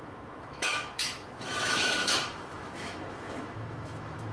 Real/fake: fake